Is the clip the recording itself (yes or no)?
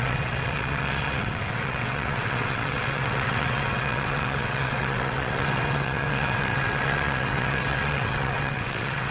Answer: no